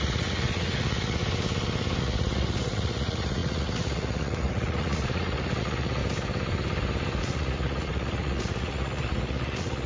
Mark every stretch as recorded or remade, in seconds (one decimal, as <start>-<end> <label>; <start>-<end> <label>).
0.0-1.2 remade; 1.2-2.0 recorded; 2.0-6.0 remade; 6.0-7.2 recorded; 7.2-9.9 remade